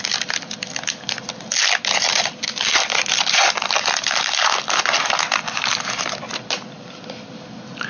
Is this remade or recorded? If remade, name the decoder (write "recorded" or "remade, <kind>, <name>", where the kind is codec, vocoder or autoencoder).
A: recorded